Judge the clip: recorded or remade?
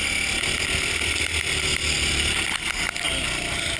recorded